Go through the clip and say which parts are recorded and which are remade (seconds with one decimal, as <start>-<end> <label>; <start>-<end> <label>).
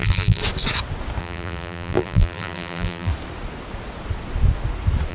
0.0-0.4 remade; 0.4-1.2 recorded; 1.2-3.1 remade; 3.1-5.1 recorded